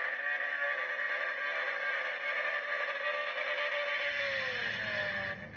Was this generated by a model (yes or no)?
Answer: no